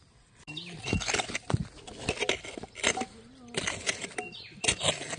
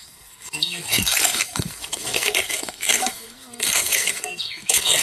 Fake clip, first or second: second